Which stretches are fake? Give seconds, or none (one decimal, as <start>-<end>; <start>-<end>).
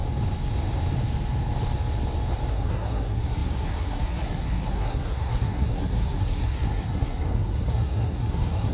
2.5-8.7